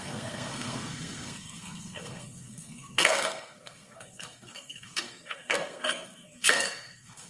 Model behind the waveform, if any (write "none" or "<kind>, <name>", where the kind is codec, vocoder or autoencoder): codec, SNAC